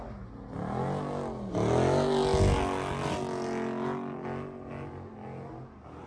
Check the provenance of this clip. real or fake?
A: real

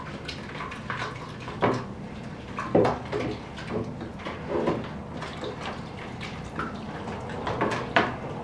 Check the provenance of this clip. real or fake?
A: real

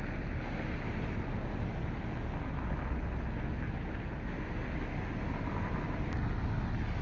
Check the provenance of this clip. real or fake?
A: real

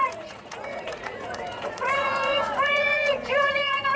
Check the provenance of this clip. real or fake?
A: fake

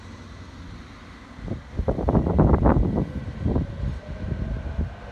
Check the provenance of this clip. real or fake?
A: real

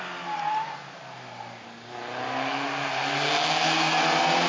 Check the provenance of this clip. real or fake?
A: real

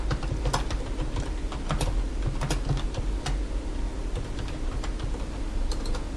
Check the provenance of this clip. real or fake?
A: real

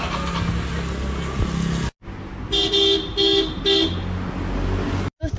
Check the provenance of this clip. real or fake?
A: real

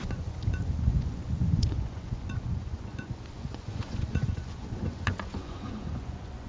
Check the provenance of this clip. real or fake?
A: fake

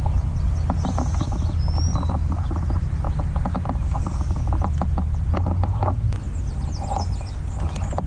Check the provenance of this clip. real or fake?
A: real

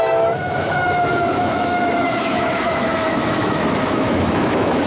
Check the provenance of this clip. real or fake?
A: fake